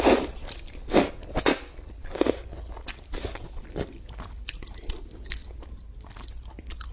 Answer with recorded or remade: recorded